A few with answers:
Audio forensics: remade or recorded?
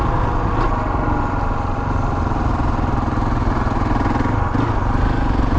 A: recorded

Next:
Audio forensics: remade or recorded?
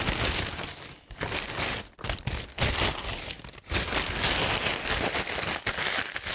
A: recorded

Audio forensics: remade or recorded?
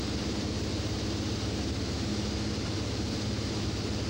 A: recorded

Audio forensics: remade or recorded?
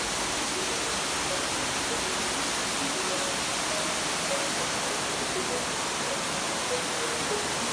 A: recorded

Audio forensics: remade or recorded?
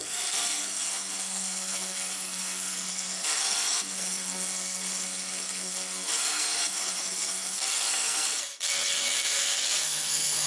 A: remade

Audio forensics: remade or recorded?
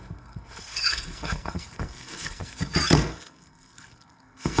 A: remade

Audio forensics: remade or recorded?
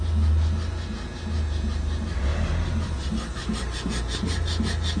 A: recorded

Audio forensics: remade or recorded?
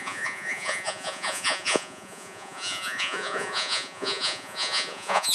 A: remade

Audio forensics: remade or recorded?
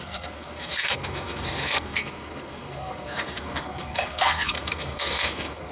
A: remade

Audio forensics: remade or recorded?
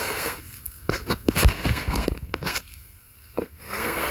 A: remade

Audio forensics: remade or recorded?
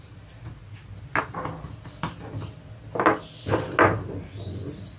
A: recorded